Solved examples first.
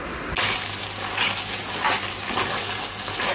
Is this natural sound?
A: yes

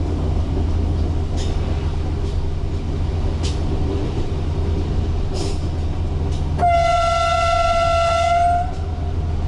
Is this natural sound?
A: yes